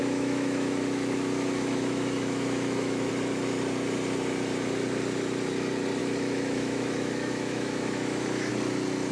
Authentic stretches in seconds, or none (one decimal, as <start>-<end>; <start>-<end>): 3.1-6.0; 8.5-9.1